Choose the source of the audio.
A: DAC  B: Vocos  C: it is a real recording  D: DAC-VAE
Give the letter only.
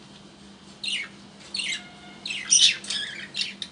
C